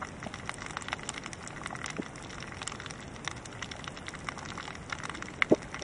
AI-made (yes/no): no